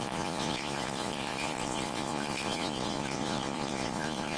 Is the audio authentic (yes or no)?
no